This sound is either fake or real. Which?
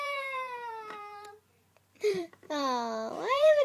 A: fake